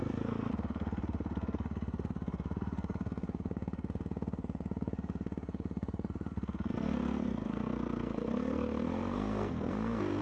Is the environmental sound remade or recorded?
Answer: remade